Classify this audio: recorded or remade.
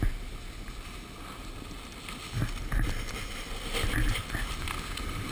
recorded